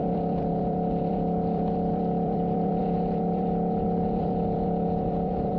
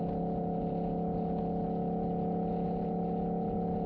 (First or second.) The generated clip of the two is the first